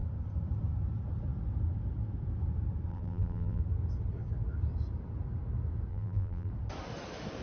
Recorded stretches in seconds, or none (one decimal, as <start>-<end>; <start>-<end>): 0.0-2.9; 3.6-5.9; 6.5-7.4